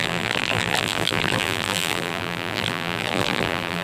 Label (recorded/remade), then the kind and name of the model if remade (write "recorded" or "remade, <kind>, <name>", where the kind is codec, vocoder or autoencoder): remade, vocoder, BigVGAN v2